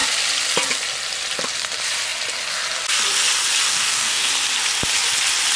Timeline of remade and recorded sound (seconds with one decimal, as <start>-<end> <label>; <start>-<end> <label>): 0.0-3.7 recorded; 3.7-4.3 remade; 4.3-5.6 recorded